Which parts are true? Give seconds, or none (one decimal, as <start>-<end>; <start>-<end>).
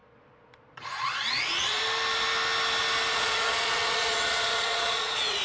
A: 1.8-3.1